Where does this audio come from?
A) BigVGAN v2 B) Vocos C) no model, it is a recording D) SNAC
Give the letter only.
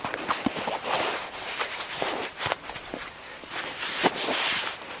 A